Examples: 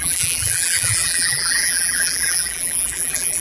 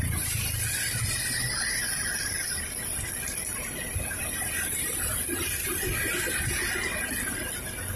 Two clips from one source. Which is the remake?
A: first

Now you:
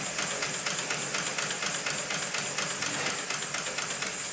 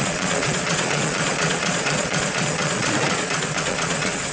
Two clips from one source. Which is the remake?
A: second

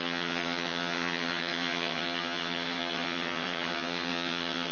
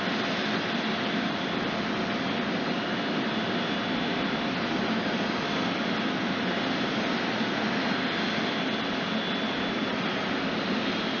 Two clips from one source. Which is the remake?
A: first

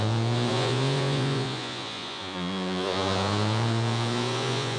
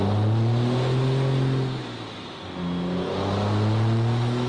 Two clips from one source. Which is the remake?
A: first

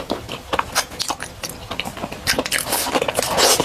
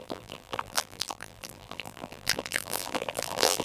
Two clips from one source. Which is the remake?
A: second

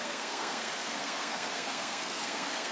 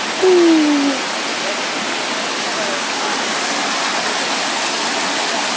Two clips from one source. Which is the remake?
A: first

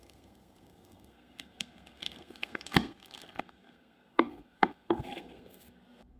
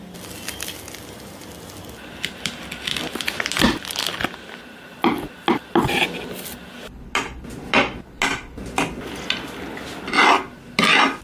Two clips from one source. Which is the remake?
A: first